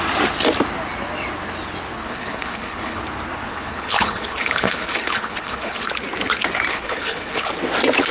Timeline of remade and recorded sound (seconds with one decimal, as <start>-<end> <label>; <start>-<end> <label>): 0.0-2.0 recorded; 2.0-3.0 remade; 3.0-3.5 recorded; 3.5-5.9 remade; 5.9-6.7 recorded; 6.7-7.5 remade; 7.5-8.1 recorded